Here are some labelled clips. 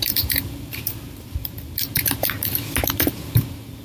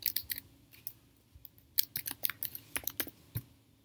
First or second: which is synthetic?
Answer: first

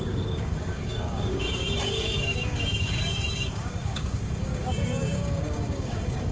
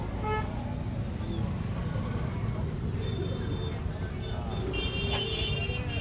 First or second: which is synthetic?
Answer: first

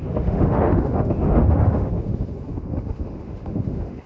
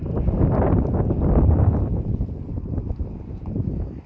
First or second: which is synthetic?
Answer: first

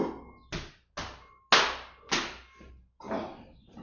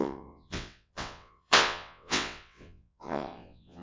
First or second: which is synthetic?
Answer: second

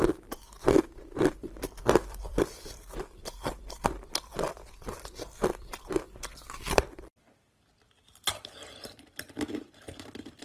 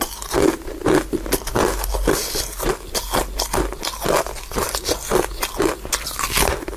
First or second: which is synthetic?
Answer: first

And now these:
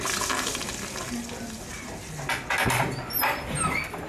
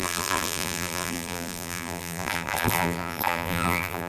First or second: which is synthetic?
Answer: second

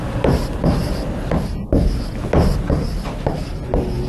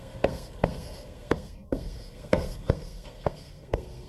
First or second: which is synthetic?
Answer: second